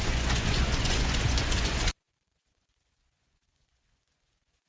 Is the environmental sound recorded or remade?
remade